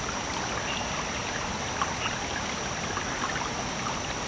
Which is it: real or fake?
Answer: real